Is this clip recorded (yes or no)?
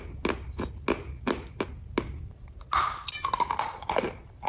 yes